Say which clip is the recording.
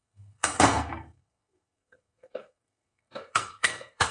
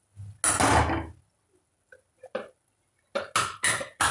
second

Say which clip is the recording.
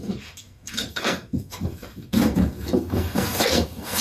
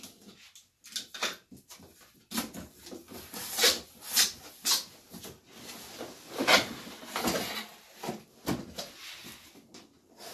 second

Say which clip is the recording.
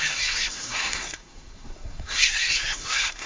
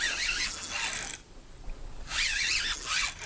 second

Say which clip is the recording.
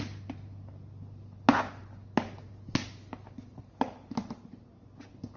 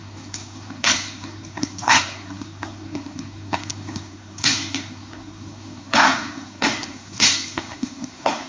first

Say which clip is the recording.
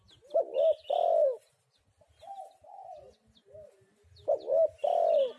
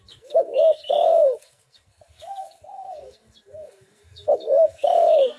first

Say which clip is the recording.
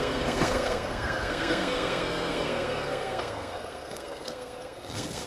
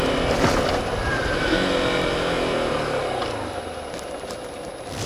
second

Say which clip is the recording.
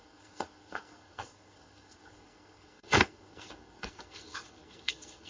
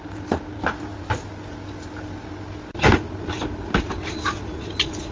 second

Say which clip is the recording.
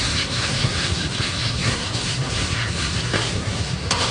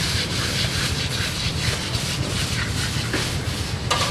second